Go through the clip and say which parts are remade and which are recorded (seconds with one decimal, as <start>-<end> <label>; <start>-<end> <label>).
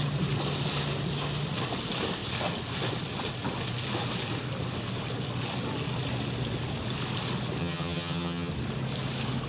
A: 0.0-7.6 recorded; 7.6-8.5 remade; 8.5-9.5 recorded